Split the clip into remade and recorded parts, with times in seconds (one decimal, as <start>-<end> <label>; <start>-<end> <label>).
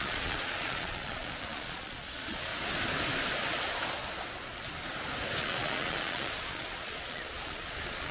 0.0-2.5 remade; 2.5-5.4 recorded; 5.4-8.1 remade